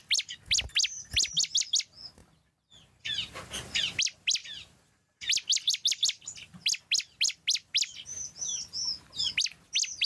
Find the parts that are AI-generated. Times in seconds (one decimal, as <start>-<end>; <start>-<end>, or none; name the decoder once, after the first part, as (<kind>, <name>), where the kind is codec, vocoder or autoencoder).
none